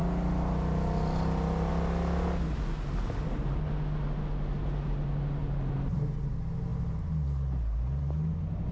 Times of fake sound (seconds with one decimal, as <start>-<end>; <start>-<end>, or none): 5.4-6.1